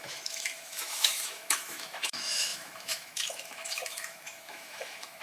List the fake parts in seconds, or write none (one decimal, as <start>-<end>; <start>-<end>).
0.0-5.2